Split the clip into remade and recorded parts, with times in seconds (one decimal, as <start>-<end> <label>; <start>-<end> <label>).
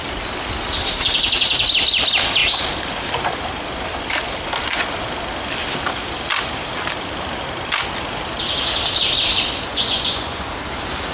0.0-9.7 recorded; 9.7-10.5 remade; 10.5-11.1 recorded